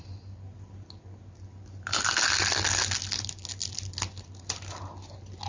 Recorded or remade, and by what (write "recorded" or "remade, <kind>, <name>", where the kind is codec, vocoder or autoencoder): recorded